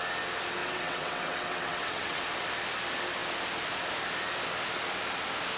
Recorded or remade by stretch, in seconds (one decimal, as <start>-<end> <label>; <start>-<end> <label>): 0.0-0.6 recorded; 0.6-2.2 remade; 2.2-5.6 recorded

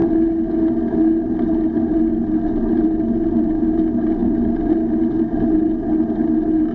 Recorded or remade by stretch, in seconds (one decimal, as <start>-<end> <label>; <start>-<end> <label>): 0.0-6.7 recorded

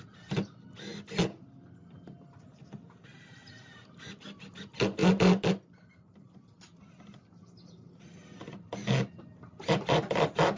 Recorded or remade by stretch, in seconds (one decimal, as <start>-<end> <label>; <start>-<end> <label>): 0.0-10.6 recorded

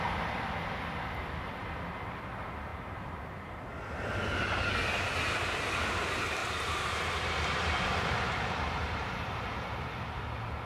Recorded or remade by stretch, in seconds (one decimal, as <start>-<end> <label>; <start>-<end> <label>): 0.0-2.7 recorded; 2.7-3.6 remade; 3.6-6.4 recorded; 6.4-10.2 remade; 10.2-10.7 recorded

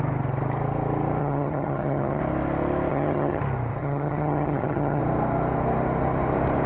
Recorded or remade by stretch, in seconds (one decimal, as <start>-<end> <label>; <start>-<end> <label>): 0.0-1.2 recorded; 1.2-2.2 remade; 2.2-2.9 recorded; 2.9-3.4 remade; 3.4-3.8 recorded; 3.8-5.0 remade; 5.0-6.7 recorded

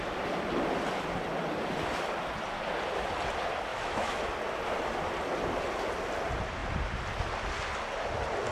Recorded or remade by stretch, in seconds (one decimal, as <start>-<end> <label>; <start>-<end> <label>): 0.0-3.7 recorded; 3.7-4.2 remade; 4.2-8.5 recorded

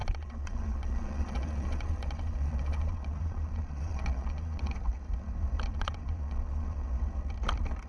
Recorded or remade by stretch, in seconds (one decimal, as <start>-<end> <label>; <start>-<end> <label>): 0.0-4.7 remade; 4.7-5.7 recorded; 5.7-6.9 remade; 6.9-7.9 recorded